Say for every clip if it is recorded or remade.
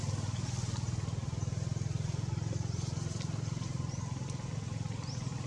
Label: recorded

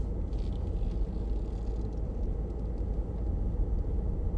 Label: recorded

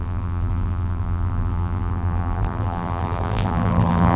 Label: remade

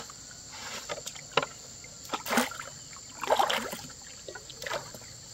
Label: recorded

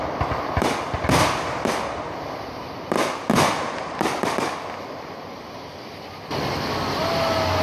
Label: recorded